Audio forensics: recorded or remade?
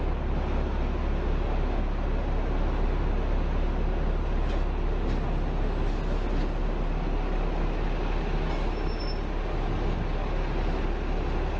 recorded